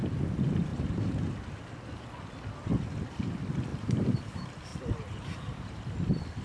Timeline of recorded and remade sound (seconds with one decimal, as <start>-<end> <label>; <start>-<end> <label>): 0.0-0.7 recorded; 0.7-1.3 remade; 1.3-3.7 recorded; 3.7-4.3 remade; 4.3-4.7 recorded; 4.7-5.8 remade; 5.8-6.4 recorded